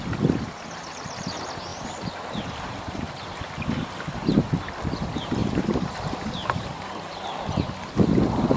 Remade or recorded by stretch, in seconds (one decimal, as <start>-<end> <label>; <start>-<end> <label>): 0.0-8.6 recorded